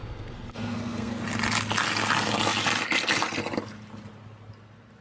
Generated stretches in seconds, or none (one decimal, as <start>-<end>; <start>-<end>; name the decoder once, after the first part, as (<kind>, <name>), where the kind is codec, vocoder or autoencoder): 0.0-1.2 (codec, SNAC)